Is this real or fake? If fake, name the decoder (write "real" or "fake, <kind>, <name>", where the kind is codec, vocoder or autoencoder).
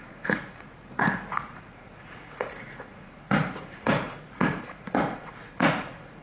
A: fake, vocoder, Vocos